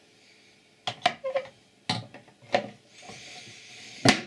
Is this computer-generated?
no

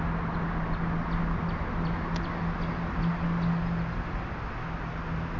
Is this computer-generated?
no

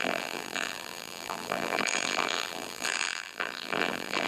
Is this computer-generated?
yes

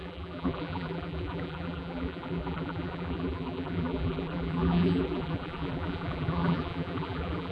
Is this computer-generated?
yes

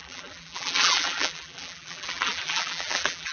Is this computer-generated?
yes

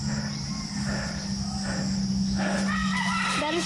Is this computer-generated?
no